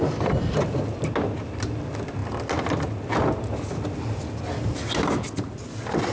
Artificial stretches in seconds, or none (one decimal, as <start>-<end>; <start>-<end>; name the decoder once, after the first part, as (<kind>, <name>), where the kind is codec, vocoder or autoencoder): none

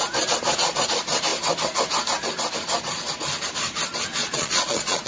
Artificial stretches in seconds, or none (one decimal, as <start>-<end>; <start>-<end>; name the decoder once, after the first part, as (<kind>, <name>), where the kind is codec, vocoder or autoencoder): 4.2-5.1 (vocoder, Vocos)

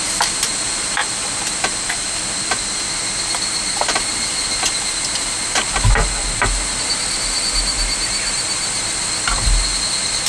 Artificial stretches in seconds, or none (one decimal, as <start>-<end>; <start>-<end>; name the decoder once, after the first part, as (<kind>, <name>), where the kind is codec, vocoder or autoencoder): none